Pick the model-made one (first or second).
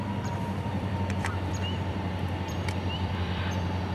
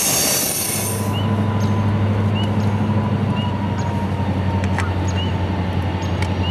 first